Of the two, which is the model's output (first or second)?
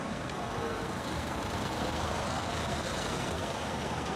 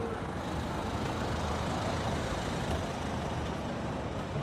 first